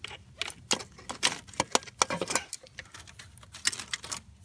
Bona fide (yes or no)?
yes